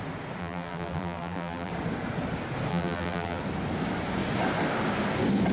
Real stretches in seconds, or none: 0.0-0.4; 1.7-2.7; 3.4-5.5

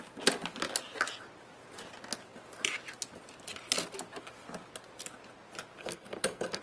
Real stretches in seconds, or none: 0.0-5.8